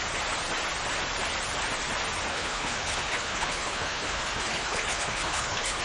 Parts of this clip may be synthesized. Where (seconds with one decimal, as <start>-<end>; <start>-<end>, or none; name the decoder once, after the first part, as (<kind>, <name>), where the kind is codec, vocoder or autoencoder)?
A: 2.3-5.8 (codec, HILCodec)